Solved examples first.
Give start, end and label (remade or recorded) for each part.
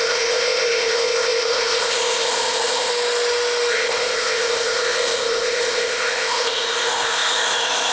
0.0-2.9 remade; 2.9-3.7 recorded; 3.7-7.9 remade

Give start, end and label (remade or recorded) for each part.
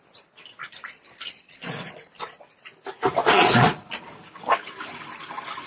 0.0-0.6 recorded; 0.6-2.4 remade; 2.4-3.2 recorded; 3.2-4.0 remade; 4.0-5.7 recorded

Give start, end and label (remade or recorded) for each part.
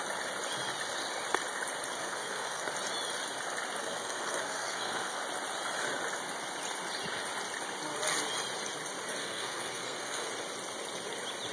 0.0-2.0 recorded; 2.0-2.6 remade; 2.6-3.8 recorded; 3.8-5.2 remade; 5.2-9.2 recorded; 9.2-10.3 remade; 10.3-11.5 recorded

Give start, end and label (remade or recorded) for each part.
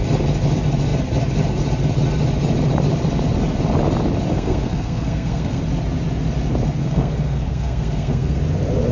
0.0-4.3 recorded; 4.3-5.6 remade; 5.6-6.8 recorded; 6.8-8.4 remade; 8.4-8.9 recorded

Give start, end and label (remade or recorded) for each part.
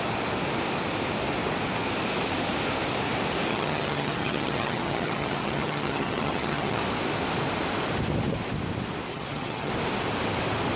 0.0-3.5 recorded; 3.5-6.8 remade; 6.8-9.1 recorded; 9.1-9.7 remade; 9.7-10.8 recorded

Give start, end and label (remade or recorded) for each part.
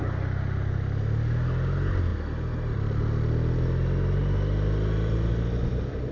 0.0-6.1 recorded